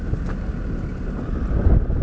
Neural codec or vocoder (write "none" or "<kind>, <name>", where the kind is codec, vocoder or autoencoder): none